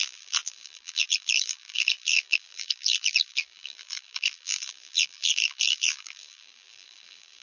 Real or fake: fake